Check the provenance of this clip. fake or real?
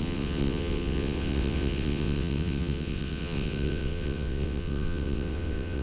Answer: fake